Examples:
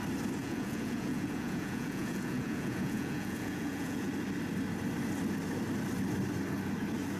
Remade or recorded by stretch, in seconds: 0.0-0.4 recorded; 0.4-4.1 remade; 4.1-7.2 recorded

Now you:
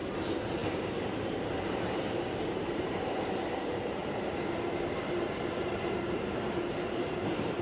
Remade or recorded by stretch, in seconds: 0.0-4.0 remade; 4.0-4.9 recorded; 4.9-7.6 remade

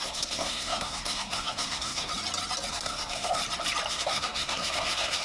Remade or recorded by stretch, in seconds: 0.0-2.1 remade; 2.1-2.7 recorded; 2.7-3.4 remade; 3.4-3.9 recorded; 3.9-5.2 remade

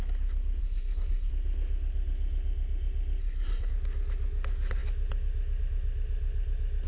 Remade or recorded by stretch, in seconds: 0.0-0.6 recorded; 0.6-1.3 remade; 1.3-3.2 recorded; 3.2-3.7 remade; 3.7-6.9 recorded

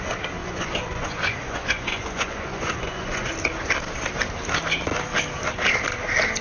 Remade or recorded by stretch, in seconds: 0.0-0.4 recorded; 0.4-3.3 remade; 3.3-6.4 recorded

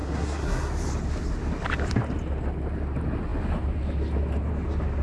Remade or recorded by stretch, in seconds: 0.0-0.7 remade; 0.7-5.0 recorded

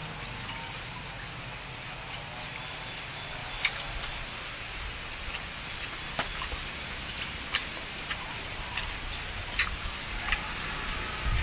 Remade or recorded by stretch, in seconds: 0.0-7.6 recorded; 7.6-8.8 remade; 8.8-11.4 recorded